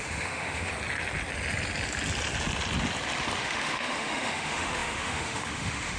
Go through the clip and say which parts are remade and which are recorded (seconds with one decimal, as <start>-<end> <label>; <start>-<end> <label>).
0.0-0.7 remade; 0.7-3.4 recorded; 3.4-6.0 remade